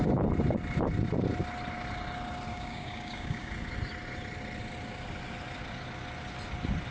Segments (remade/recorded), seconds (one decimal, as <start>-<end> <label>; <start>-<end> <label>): 0.0-2.5 recorded; 2.5-3.5 remade; 3.5-6.9 recorded